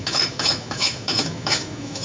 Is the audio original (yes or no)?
no